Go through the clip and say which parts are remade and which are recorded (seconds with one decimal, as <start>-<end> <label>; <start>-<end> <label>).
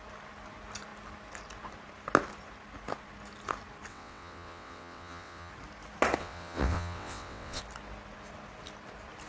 0.0-3.9 recorded; 3.9-5.5 remade; 5.5-6.2 recorded; 6.2-7.6 remade; 7.6-9.3 recorded